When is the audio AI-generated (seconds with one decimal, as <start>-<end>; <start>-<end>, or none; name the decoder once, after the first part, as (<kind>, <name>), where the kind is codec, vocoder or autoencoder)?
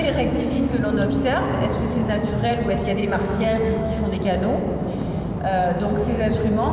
0.0-0.7 (autoencoder, DAC-VAE); 2.0-2.5; 3.0-4.6; 5.6-6.3